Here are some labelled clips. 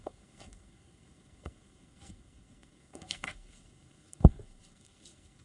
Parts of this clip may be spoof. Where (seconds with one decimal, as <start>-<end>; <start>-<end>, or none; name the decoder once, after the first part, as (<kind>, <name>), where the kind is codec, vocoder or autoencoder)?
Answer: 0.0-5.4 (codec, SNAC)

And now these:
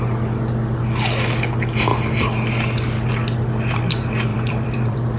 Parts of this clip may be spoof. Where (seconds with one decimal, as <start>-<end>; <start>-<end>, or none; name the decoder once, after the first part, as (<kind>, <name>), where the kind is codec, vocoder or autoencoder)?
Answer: 4.3-5.2 (vocoder, BigVGAN v2)

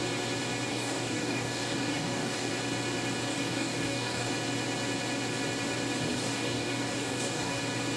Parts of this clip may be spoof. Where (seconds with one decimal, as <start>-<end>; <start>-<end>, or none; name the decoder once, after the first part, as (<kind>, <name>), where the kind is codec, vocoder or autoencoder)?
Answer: 0.7-2.5 (codec, DAC); 3.3-4.3; 6.1-7.6